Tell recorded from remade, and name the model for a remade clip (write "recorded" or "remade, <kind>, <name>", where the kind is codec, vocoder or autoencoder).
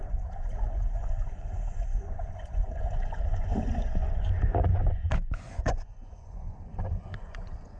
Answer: remade, vocoder, Vocos